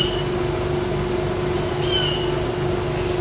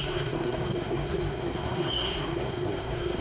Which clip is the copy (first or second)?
second